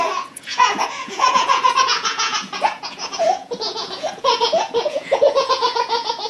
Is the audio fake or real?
fake